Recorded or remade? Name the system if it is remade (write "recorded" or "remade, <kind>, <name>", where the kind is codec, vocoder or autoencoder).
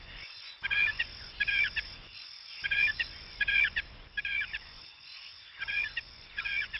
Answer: remade, vocoder, Vocos